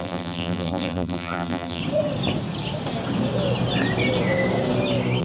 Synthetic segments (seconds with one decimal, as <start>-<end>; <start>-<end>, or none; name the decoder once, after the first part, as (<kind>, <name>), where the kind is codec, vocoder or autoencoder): 0.0-1.8 (vocoder, BigVGAN v2)